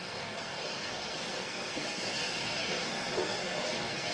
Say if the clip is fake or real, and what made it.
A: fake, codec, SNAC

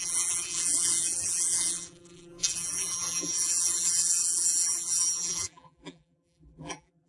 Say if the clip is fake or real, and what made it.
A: fake, vocoder, BigVGAN v2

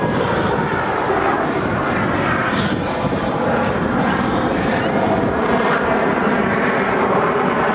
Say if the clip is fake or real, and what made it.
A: real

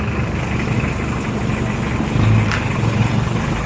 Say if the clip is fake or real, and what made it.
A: real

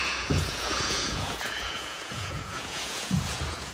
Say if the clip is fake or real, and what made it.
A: fake, vocoder, Vocos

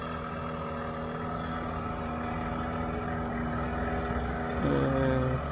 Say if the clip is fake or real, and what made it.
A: real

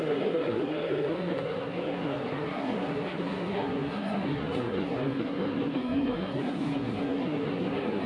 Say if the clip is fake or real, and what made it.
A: fake, codec, SNAC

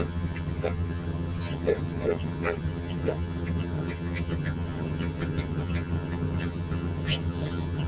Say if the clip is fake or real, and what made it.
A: fake, vocoder, HiFi-GAN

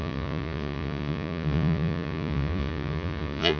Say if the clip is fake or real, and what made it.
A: fake, vocoder, Vocos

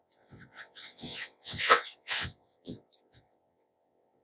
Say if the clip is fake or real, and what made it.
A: fake, vocoder, WaveNeXt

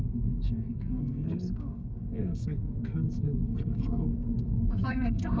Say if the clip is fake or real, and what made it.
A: fake, codec, SNAC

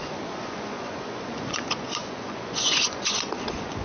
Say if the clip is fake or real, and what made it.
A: fake, vocoder, Vocos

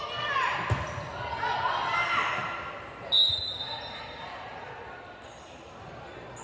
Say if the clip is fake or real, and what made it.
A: real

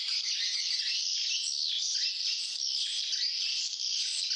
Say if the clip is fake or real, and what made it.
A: real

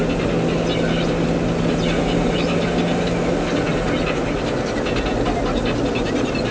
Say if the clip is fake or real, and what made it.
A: real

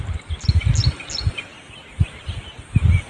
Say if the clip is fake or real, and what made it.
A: real